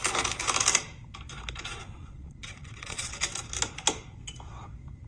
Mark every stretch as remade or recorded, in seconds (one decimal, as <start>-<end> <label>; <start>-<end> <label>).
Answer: 0.0-1.7 recorded; 1.7-3.1 remade; 3.1-5.1 recorded